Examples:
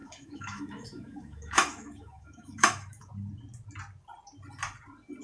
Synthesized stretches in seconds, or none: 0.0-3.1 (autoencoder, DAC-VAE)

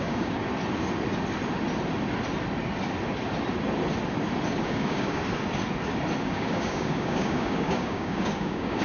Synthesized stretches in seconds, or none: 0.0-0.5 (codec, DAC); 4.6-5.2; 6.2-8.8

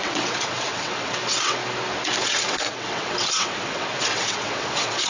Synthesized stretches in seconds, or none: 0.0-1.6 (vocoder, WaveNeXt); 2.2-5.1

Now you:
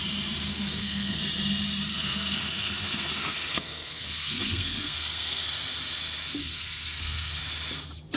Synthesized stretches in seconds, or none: 0.5-1.2 (codec, SNAC); 1.9-5.5; 6.4-7.4